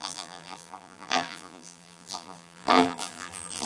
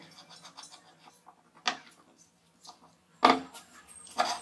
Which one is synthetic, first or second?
first